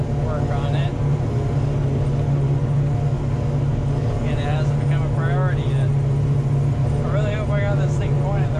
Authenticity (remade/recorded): recorded